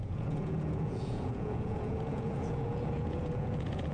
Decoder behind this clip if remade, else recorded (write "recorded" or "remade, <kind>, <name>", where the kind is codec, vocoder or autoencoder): remade, vocoder, Vocos